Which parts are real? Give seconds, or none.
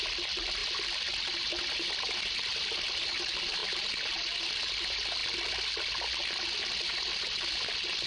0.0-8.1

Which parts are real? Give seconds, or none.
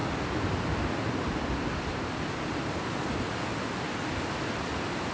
0.0-5.1